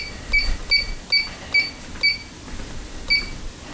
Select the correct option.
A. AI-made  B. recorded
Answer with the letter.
B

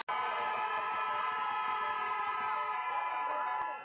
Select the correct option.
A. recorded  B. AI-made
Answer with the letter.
A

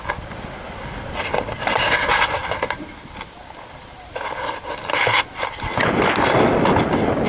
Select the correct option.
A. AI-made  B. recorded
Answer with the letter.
B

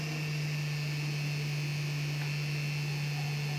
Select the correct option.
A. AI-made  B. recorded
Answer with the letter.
B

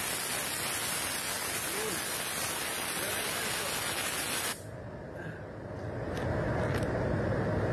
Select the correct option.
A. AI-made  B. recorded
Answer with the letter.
B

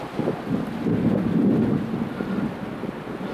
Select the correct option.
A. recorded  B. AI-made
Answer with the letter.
A